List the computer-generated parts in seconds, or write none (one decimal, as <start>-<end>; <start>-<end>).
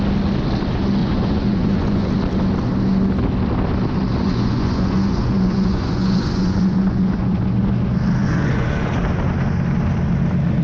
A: 1.0-2.1; 4.2-7.4; 8.2-8.9